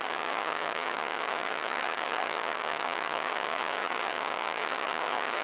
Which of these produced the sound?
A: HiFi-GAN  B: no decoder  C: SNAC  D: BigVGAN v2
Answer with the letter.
A